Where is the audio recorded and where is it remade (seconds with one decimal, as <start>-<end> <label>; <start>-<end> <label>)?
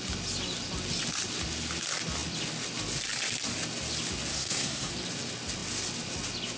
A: 0.0-4.3 recorded; 4.3-4.9 remade; 4.9-6.6 recorded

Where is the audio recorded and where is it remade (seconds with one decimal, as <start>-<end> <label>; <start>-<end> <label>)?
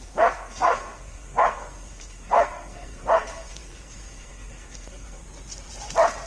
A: 0.0-5.2 remade; 5.2-6.3 recorded